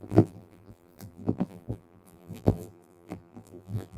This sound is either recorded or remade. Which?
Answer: remade